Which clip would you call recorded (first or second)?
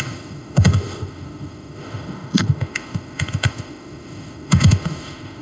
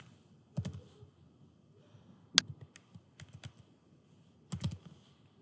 second